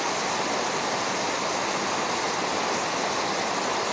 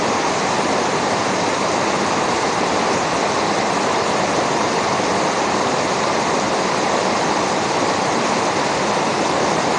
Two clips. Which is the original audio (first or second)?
first